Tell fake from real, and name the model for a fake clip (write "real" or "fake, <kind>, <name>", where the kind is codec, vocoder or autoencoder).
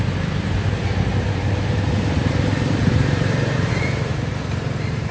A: fake, vocoder, BigVGAN v2